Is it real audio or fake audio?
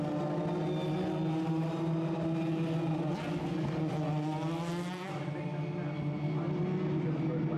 real